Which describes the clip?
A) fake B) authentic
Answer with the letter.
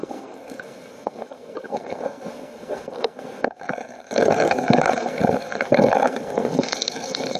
A